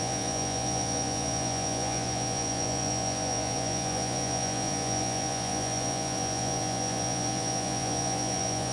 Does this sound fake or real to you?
fake